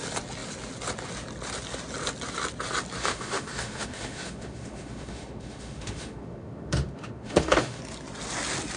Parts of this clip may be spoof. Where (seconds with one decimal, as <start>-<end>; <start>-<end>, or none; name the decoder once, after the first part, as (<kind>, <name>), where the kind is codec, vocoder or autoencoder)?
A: 3.0-7.8 (autoencoder, DAC-VAE)